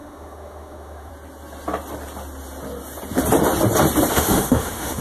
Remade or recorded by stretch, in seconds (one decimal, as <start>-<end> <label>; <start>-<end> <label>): 0.0-1.1 remade; 1.1-4.1 recorded; 4.1-5.0 remade